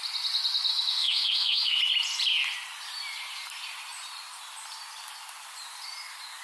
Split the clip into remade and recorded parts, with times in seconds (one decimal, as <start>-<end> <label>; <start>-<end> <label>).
0.0-0.7 recorded; 0.7-1.8 remade; 1.8-6.4 recorded